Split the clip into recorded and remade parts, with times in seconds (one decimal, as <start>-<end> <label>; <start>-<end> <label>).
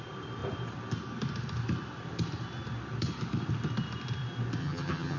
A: 0.0-4.6 recorded; 4.6-5.2 remade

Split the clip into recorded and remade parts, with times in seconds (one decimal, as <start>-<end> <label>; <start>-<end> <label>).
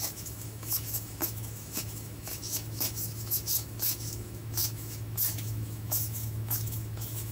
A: 0.0-7.3 remade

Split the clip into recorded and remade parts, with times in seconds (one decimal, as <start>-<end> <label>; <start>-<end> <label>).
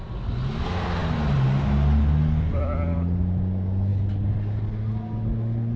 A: 0.0-5.8 recorded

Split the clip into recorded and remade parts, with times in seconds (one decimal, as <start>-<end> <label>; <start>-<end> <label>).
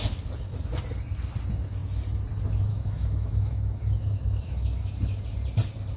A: 0.0-2.7 recorded; 2.7-5.2 remade; 5.2-6.0 recorded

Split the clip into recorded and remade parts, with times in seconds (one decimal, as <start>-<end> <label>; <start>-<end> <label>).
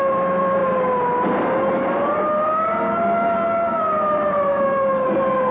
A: 0.0-5.5 recorded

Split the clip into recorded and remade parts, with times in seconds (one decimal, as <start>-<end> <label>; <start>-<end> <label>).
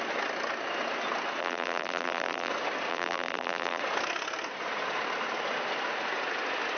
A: 0.0-1.4 recorded; 1.4-2.5 remade; 2.5-2.9 recorded; 2.9-3.8 remade; 3.8-6.8 recorded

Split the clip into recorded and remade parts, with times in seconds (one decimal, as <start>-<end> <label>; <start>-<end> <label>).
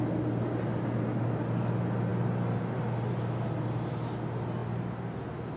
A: 0.0-1.1 recorded; 1.1-1.7 remade; 1.7-5.6 recorded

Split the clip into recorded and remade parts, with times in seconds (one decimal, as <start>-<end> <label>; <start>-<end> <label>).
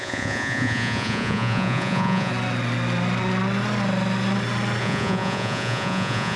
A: 0.0-2.3 remade; 2.3-4.8 recorded; 4.8-6.4 remade